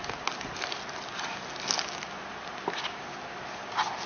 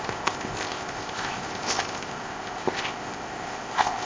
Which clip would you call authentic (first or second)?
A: first